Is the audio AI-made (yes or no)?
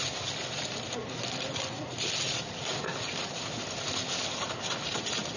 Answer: no